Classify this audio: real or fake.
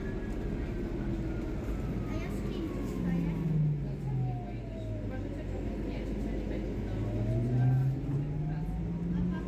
real